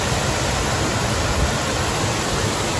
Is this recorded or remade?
recorded